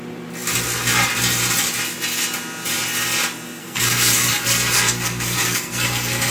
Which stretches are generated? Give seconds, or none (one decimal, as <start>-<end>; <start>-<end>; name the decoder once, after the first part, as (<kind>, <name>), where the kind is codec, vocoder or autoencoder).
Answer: 3.6-6.3 (codec, SNAC)